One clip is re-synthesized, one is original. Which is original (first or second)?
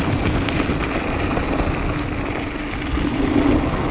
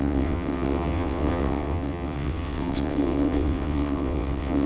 first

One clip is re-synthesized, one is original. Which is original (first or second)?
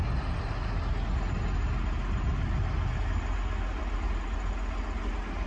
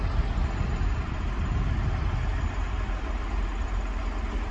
first